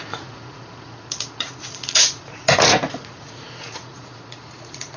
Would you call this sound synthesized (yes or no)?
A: yes